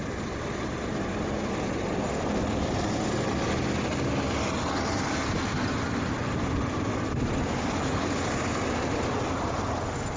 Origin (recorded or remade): recorded